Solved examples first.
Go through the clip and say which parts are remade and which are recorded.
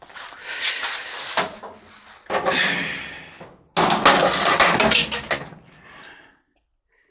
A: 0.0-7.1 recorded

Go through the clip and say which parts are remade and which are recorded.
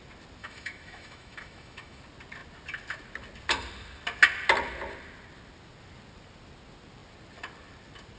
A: 0.0-0.4 recorded; 0.4-2.0 remade; 2.0-8.2 recorded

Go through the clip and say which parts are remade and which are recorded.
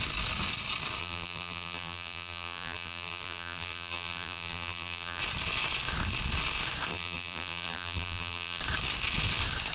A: 0.0-1.0 recorded; 1.0-5.2 remade; 5.2-6.9 recorded; 6.9-8.6 remade; 8.6-9.7 recorded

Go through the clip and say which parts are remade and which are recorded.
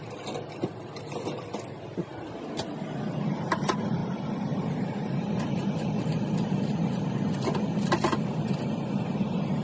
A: 0.0-9.6 recorded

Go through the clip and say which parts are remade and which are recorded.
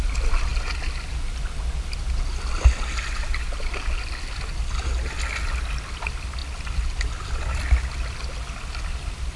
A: 0.0-9.4 recorded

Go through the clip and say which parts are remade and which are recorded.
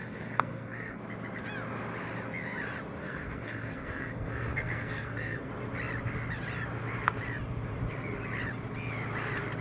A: 0.0-1.0 remade; 1.0-3.0 recorded; 3.0-5.5 remade; 5.5-9.6 recorded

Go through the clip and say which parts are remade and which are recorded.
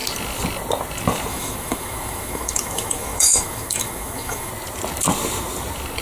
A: 0.0-1.3 recorded; 1.3-4.5 remade; 4.5-6.0 recorded